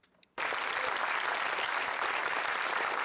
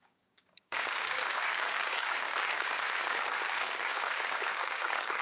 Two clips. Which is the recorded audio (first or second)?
first